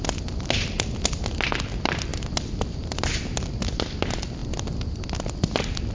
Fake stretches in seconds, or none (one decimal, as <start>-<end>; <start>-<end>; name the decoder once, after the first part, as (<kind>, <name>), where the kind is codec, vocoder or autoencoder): none